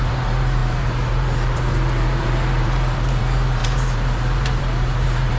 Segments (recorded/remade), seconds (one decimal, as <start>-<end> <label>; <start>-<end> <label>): 0.0-5.4 remade